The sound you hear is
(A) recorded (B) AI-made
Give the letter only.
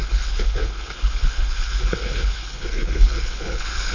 B